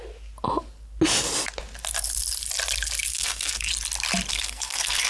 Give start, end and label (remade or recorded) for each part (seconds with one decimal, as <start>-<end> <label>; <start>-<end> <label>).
0.0-3.1 recorded; 3.1-3.7 remade; 3.7-4.3 recorded; 4.3-5.1 remade